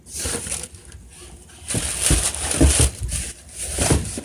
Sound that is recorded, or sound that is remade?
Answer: recorded